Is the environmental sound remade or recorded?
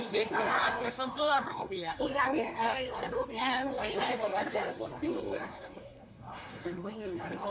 remade